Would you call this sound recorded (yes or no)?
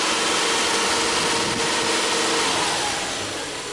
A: yes